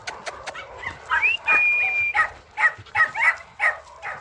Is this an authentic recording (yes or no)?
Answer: yes